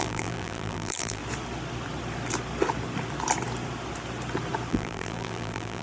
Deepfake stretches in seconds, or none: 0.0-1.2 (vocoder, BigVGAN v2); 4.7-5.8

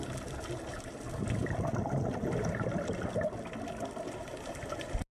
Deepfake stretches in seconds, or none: none

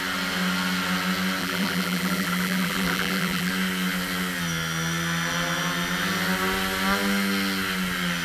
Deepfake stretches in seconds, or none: 1.4-3.5 (vocoder, BigVGAN v2)